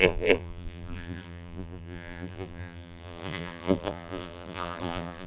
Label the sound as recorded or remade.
remade